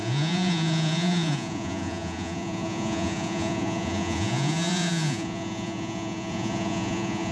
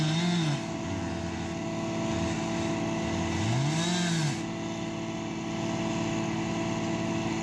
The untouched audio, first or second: second